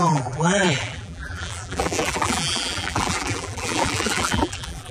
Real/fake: fake